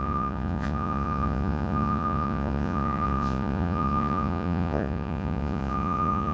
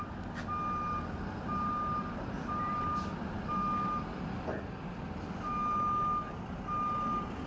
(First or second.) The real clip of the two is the second